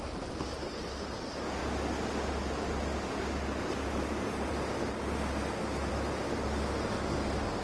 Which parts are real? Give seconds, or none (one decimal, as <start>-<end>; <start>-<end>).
0.0-7.6